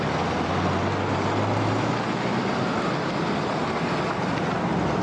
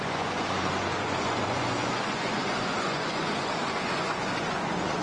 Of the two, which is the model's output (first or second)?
second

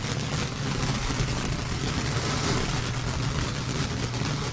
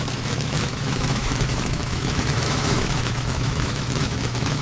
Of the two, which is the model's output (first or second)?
second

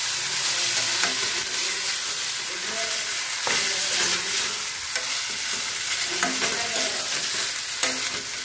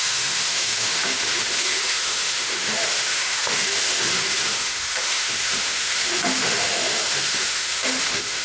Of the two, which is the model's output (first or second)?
second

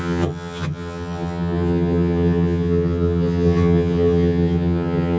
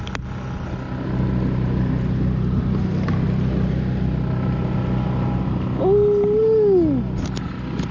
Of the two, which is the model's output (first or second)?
first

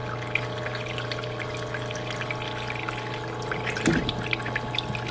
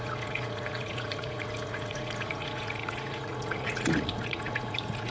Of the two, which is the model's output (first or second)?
second